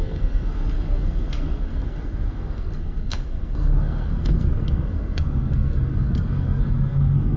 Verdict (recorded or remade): remade